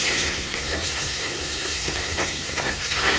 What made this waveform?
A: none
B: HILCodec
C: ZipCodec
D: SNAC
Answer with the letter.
D